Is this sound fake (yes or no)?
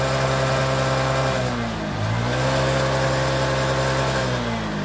no